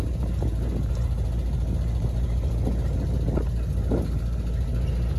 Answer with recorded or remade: recorded